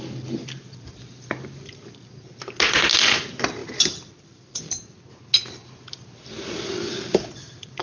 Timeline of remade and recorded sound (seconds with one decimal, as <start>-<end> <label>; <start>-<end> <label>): 0.0-3.6 recorded; 3.6-5.0 remade; 5.0-7.1 recorded; 7.1-7.8 remade